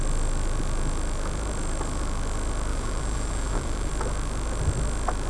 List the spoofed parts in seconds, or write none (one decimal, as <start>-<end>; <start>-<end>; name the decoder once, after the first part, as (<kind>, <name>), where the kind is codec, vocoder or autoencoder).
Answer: 2.7-3.9 (vocoder, BigVGAN v2)